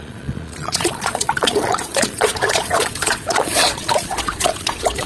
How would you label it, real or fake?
fake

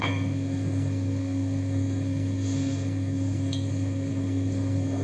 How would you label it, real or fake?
fake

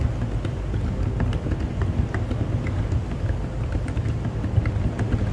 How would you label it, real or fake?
real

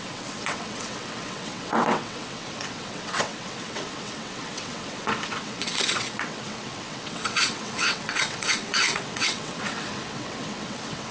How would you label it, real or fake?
fake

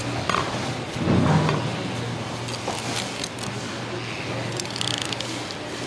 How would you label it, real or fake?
real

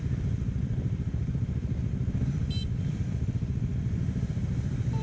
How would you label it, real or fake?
fake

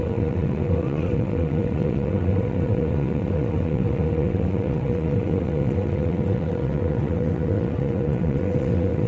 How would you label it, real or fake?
fake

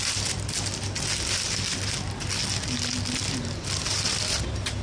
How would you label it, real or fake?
real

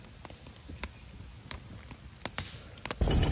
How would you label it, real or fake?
real